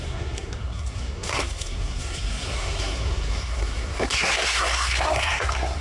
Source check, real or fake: fake